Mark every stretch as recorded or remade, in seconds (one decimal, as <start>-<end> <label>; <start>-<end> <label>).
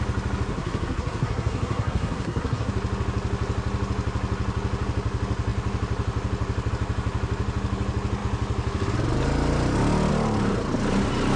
0.0-0.5 recorded; 0.5-2.7 remade; 2.7-11.4 recorded